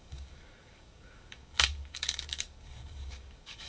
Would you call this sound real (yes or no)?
no